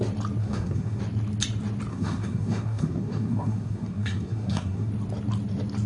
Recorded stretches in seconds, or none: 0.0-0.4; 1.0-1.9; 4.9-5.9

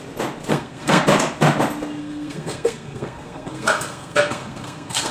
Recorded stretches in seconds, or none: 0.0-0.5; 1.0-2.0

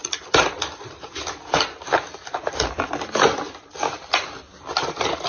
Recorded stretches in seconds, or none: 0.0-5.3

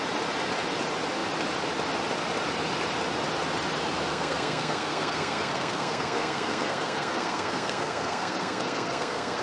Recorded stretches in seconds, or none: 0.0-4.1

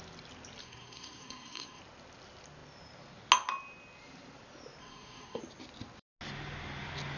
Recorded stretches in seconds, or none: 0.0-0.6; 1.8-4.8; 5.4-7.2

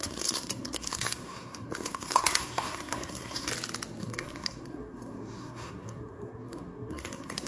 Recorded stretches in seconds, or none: 3.5-4.0

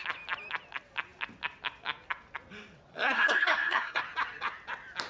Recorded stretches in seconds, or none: 0.0-2.9; 4.0-5.1

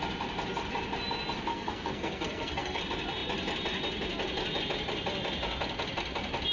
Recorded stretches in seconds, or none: 0.0-1.5; 2.8-6.5